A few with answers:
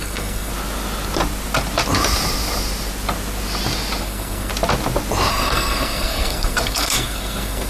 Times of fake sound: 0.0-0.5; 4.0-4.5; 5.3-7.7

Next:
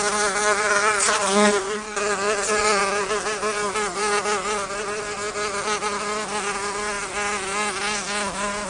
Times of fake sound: 0.4-2.8

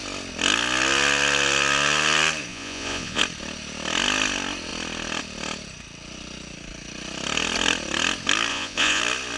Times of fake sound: 2.5-3.2; 8.5-9.0

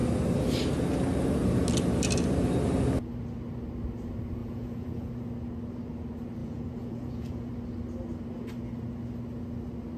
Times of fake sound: 4.4-5.1; 6.4-7.5

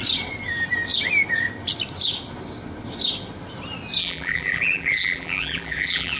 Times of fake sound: 4.0-6.2

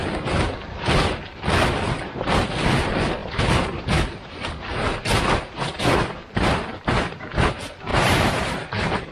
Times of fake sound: 3.2-3.8; 7.9-9.1

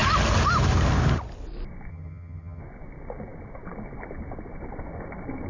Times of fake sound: 1.9-2.6